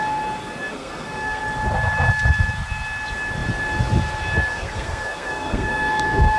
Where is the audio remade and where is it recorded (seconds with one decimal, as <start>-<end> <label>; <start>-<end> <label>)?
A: 0.0-0.7 recorded; 0.7-1.4 remade; 1.4-4.5 recorded; 4.5-6.4 remade